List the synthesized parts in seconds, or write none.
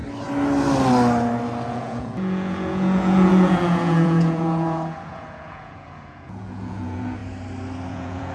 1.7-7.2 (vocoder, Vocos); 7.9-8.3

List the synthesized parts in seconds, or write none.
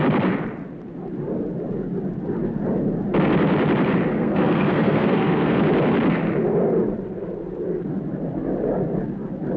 4.1-5.6 (codec, SNAC)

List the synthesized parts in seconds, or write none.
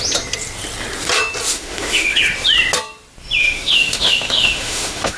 1.5-2.2 (autoencoder, DAC-VAE); 3.4-5.2